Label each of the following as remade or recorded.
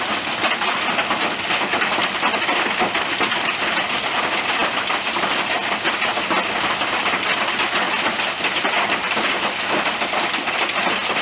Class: recorded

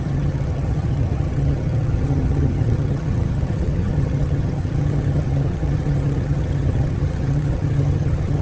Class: remade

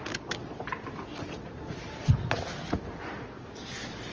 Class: recorded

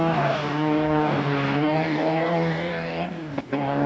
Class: remade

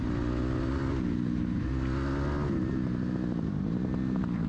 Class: recorded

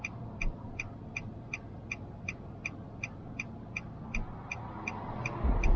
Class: recorded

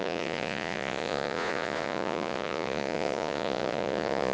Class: remade